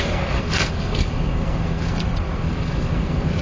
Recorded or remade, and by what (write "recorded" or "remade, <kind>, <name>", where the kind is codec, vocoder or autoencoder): remade, codec, SNAC